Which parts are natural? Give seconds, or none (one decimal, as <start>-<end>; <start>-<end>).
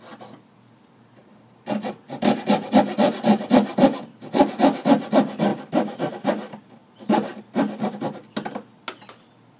0.0-9.6